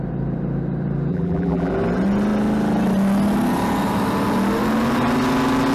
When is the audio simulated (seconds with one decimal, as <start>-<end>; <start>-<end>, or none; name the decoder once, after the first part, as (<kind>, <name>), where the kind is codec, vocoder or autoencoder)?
1.1-1.7 (vocoder, BigVGAN v2)